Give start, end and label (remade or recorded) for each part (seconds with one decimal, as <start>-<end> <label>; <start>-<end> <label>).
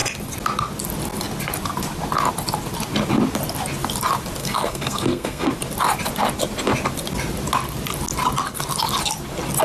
0.0-4.4 recorded; 4.4-5.5 remade; 5.5-9.6 recorded